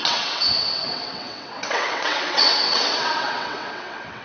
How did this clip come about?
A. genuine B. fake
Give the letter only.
B